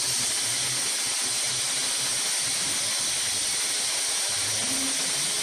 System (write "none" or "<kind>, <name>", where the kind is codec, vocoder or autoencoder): none